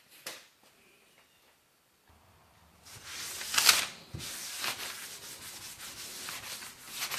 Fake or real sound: real